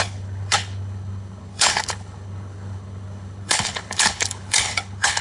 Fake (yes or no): yes